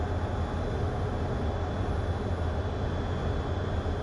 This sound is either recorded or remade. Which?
recorded